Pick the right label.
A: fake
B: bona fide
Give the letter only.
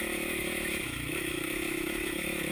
A